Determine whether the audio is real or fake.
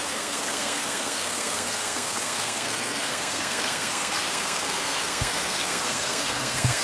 fake